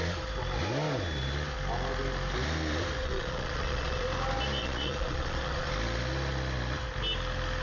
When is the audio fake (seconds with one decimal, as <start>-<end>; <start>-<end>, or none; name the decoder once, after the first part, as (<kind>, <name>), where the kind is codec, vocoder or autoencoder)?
3.0-4.0 (vocoder, Vocos); 4.6-5.7